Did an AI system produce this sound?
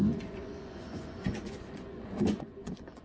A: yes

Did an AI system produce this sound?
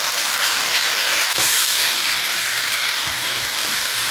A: yes